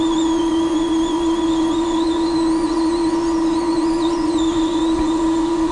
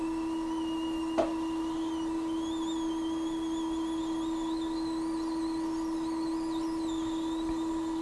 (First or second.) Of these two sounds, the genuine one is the second